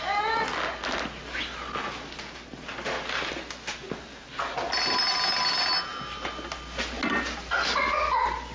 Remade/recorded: recorded